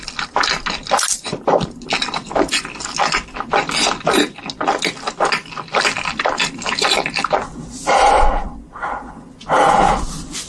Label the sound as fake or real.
real